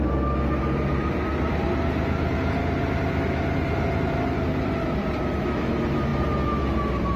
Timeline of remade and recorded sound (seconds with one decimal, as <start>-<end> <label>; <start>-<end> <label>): 0.0-7.2 recorded